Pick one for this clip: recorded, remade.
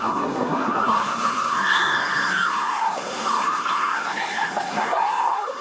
remade